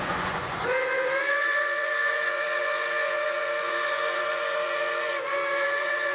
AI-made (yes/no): yes